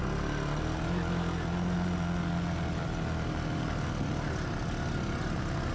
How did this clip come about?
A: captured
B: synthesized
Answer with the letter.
A